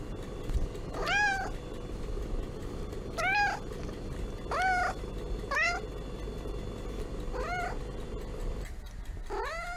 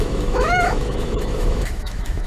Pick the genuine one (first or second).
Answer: first